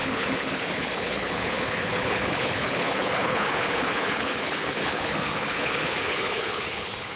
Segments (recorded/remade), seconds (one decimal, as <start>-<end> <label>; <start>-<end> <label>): 0.0-7.2 remade